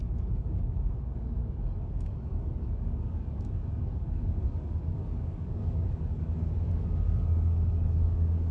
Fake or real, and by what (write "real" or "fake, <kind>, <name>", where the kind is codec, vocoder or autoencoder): fake, codec, DAC